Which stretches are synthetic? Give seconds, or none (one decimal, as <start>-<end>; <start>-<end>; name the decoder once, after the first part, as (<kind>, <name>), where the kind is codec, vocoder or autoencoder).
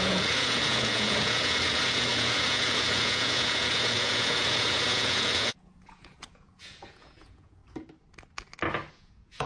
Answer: 0.0-7.6 (vocoder, Vocos); 8.9-9.5